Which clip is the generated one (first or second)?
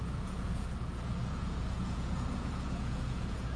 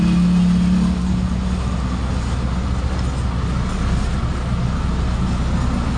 first